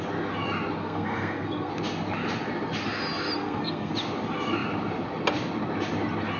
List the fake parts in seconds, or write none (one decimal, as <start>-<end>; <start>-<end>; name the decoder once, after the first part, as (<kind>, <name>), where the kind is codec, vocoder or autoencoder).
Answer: 0.8-1.7 (codec, SNAC); 3.4-3.9